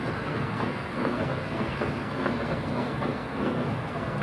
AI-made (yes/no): yes